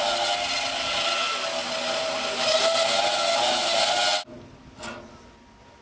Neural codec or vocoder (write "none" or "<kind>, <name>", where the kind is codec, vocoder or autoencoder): none